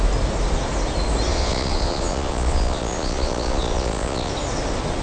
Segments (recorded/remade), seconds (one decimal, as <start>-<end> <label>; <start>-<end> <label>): 0.0-1.3 recorded; 1.3-4.3 remade; 4.3-5.0 recorded

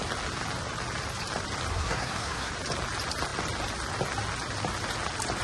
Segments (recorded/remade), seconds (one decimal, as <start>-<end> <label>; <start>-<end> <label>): 0.0-1.7 recorded; 1.7-2.5 remade; 2.5-5.4 recorded

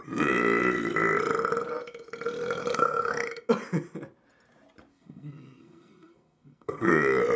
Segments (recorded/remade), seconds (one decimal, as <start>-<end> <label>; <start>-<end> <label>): 0.0-2.7 recorded; 2.7-3.5 remade; 3.5-4.9 recorded; 4.9-6.9 remade; 6.9-7.4 recorded

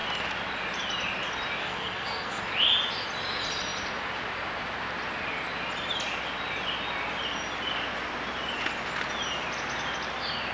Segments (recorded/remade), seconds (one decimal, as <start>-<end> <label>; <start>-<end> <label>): 0.0-1.6 recorded; 1.6-2.4 remade; 2.4-10.5 recorded

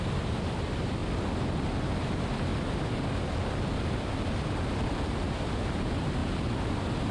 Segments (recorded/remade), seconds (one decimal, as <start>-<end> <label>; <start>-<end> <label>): 0.0-1.0 remade; 1.0-1.8 recorded; 1.8-6.2 remade; 6.2-7.1 recorded